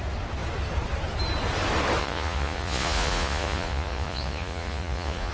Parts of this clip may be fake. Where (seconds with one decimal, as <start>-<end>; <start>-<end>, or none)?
2.0-5.3